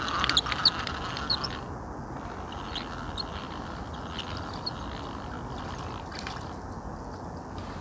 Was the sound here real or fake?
real